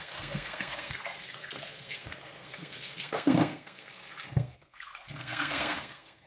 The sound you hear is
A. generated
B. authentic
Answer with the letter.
A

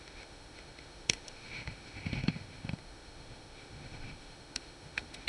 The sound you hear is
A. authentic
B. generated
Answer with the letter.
B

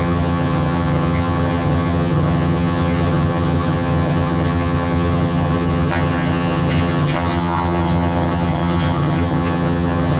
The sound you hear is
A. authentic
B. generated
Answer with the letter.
B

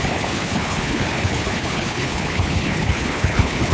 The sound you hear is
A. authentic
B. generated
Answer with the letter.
B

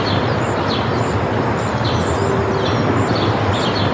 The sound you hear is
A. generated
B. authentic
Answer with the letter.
B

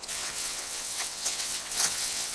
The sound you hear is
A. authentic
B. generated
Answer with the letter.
B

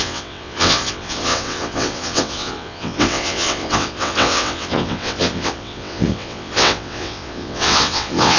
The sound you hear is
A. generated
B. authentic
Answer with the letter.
A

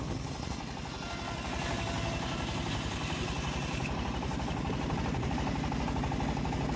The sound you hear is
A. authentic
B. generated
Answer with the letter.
A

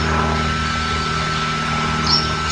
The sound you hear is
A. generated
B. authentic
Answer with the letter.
B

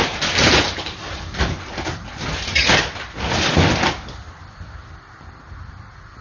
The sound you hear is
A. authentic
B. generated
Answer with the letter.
A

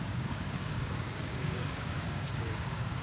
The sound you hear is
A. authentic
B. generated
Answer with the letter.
B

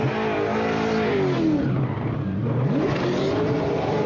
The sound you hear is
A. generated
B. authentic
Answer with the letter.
B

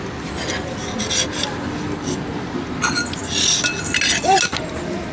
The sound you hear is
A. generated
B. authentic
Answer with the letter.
B